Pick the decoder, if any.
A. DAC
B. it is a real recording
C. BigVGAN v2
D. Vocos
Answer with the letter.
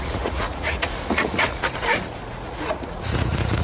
D